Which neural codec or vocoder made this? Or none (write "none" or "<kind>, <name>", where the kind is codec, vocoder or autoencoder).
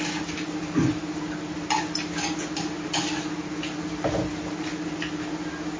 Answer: none